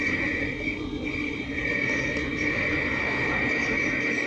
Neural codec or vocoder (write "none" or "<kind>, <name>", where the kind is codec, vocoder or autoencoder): vocoder, BigVGAN v2